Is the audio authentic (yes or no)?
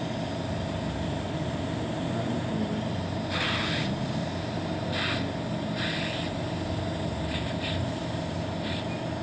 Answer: yes